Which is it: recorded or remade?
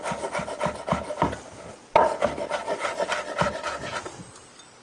recorded